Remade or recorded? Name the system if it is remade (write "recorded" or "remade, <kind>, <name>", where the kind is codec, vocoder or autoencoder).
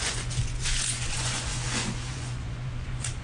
remade, vocoder, Vocos